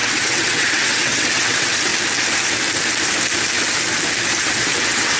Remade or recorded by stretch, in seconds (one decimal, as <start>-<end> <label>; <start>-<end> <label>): 0.0-1.9 remade; 1.9-4.4 recorded; 4.4-5.2 remade